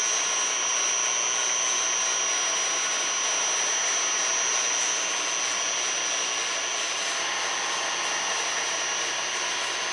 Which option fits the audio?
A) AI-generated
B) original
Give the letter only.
B